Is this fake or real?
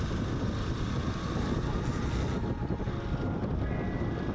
real